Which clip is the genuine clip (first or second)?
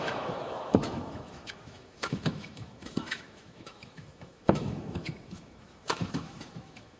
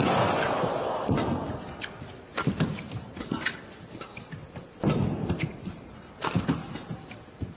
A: second